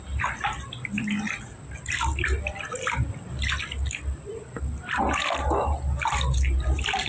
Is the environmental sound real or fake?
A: real